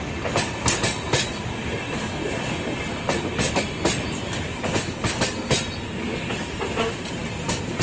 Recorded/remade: recorded